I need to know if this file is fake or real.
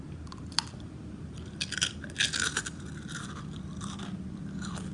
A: real